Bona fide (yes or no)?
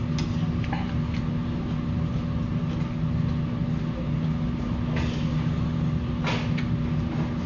yes